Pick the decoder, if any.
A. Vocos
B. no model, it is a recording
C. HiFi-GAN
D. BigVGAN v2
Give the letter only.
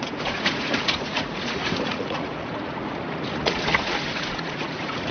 A